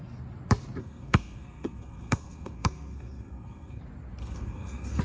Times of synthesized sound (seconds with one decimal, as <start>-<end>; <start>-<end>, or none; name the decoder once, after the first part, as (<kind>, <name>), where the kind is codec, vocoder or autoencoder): 0.8-3.8 (codec, SNAC); 4.2-5.0